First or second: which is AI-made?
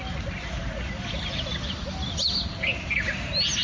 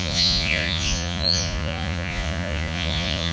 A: second